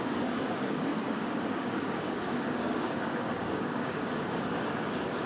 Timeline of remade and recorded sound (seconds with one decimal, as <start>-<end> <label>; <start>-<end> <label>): 0.0-5.3 remade